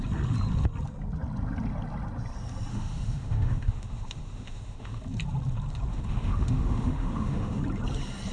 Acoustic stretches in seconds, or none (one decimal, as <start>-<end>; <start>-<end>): 0.0-2.7; 5.0-5.9; 7.6-8.3

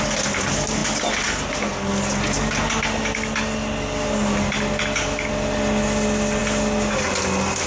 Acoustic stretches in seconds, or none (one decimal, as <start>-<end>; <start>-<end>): 0.0-7.7

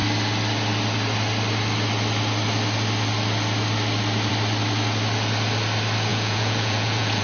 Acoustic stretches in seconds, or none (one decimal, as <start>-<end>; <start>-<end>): 0.0-6.1